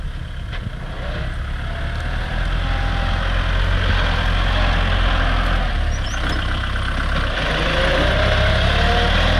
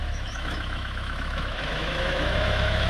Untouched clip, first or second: first